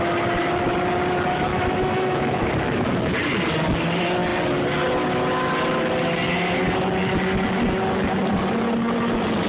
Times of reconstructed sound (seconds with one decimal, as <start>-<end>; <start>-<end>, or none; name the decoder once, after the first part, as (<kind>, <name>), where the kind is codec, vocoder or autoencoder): 1.5-2.9 (autoencoder, DAC-VAE)